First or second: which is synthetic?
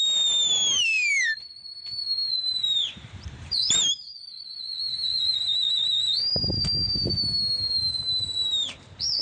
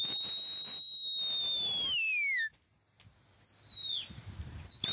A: first